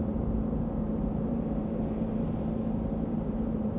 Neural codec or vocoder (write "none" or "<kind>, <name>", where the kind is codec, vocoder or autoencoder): vocoder, BigVGAN v2